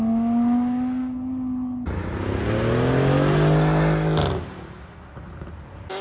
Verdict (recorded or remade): recorded